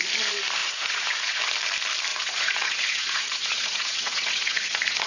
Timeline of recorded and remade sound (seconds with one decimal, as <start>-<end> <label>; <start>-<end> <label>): 0.0-0.6 recorded; 0.6-1.4 remade; 1.4-2.1 recorded; 2.1-5.1 remade